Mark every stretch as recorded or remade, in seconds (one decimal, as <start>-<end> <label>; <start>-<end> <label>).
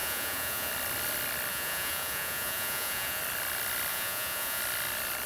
0.0-0.7 remade; 0.7-1.5 recorded; 1.5-3.2 remade; 3.2-3.9 recorded; 3.9-4.6 remade; 4.6-5.3 recorded